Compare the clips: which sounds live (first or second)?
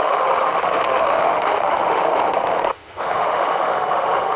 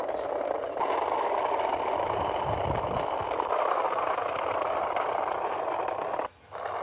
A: second